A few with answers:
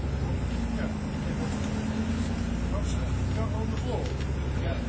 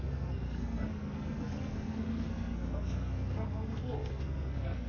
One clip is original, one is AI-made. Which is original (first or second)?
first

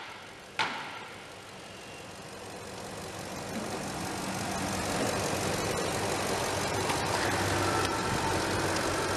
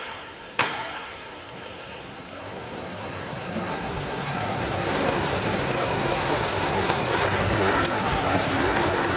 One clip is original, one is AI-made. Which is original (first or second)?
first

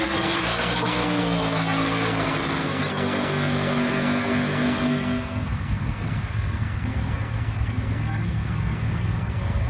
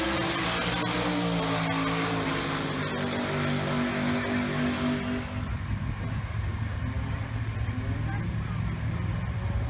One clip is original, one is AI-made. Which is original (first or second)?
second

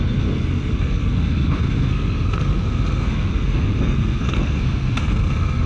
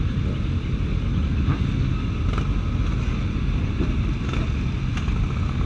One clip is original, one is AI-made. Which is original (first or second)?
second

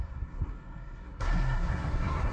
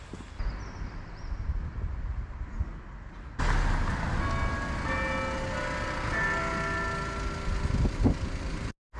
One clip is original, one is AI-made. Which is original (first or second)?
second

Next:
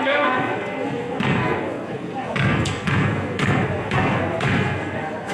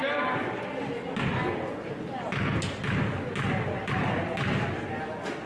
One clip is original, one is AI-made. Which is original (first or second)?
second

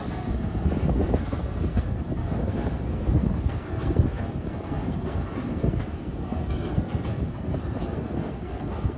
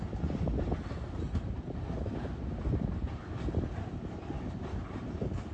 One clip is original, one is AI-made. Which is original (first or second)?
second